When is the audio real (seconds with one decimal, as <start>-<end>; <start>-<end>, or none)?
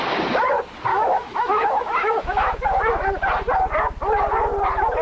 0.0-0.9; 3.1-5.0